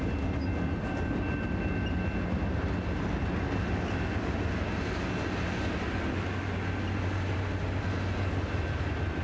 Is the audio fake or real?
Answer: real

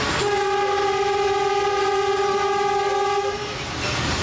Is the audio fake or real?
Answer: real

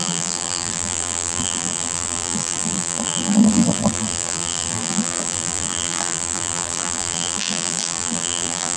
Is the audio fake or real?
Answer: fake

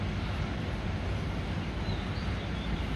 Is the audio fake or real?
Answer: real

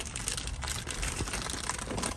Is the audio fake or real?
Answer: real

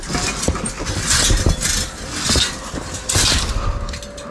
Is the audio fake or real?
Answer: real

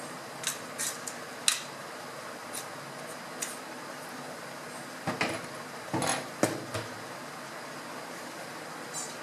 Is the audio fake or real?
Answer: real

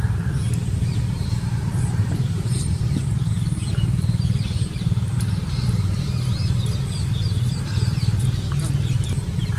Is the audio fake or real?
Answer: fake